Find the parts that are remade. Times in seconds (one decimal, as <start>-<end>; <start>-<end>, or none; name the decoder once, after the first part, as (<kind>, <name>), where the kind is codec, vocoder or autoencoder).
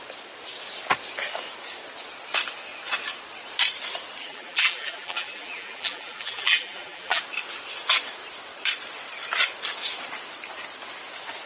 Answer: 4.2-7.2 (vocoder, BigVGAN v2)